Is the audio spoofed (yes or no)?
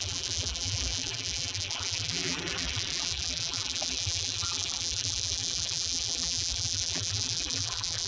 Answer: yes